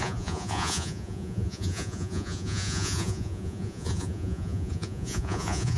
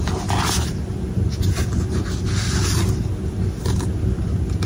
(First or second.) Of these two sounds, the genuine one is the second